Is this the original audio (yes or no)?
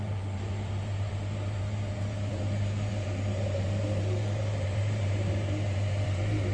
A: no